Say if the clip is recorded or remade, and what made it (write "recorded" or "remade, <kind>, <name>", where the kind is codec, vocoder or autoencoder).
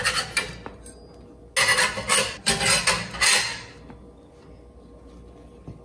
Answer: recorded